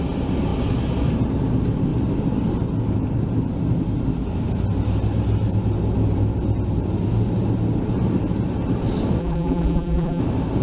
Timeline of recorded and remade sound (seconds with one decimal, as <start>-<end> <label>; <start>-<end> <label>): 0.0-9.2 recorded; 9.2-10.2 remade; 10.2-10.6 recorded